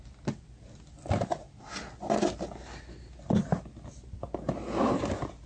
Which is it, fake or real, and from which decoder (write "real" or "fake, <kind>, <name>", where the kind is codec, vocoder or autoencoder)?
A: real